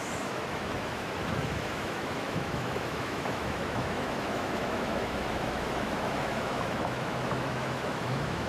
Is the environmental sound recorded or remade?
remade